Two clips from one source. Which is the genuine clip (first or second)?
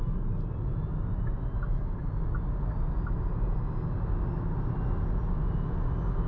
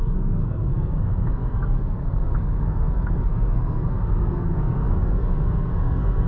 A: first